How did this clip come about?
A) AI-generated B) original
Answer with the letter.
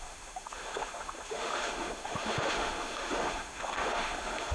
A